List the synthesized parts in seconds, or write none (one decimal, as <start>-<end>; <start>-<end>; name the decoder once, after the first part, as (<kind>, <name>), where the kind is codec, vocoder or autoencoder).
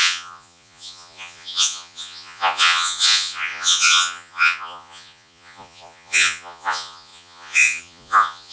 0.0-8.5 (vocoder, Vocos)